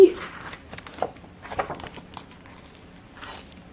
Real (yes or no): no